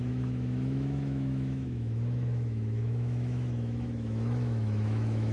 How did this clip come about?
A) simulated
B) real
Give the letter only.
A